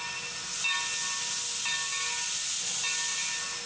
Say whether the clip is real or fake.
real